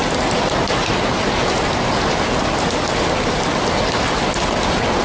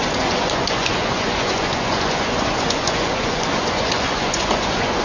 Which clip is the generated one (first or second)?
second